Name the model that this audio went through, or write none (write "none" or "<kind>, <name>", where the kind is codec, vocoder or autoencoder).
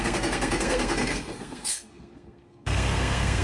codec, SNAC